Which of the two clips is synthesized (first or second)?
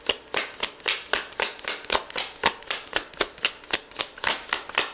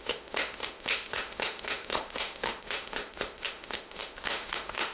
second